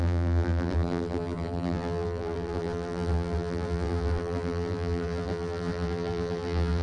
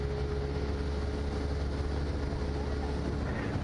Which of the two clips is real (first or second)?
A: second